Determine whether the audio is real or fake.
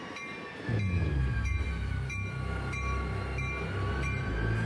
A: real